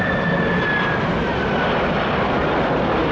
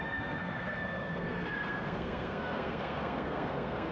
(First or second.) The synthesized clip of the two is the second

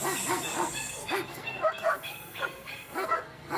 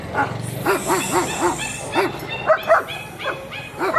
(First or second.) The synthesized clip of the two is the first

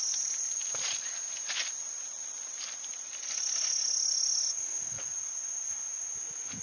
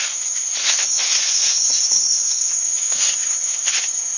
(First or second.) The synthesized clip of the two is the second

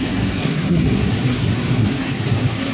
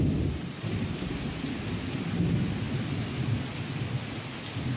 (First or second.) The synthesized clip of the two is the first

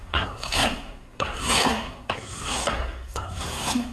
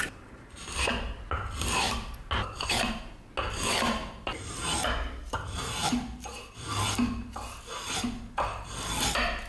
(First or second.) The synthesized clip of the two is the first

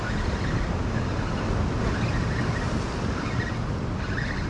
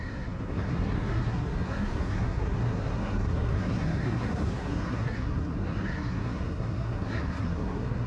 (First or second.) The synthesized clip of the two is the second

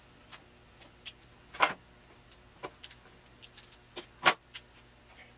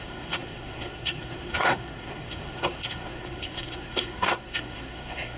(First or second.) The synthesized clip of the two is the second